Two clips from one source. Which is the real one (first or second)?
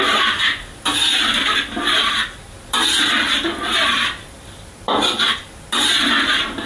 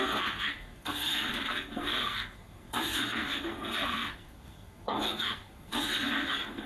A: first